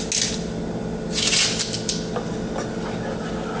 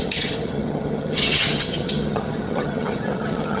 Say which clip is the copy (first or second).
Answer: second